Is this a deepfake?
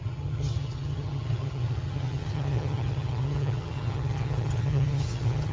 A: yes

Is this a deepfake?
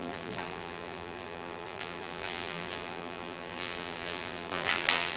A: yes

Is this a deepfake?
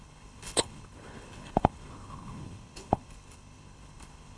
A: yes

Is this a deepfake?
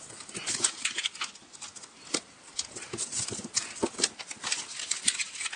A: no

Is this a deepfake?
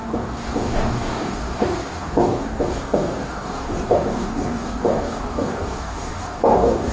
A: yes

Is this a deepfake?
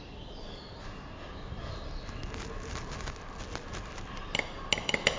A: no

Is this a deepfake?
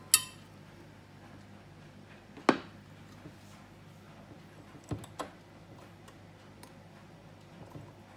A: no